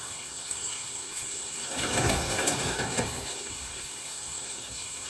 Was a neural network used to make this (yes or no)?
yes